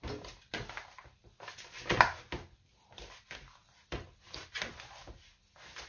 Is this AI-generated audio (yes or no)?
no